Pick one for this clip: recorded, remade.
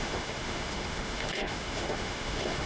remade